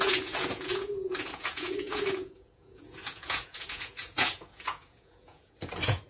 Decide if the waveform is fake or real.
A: fake